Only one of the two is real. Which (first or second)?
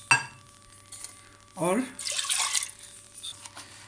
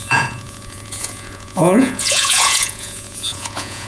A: first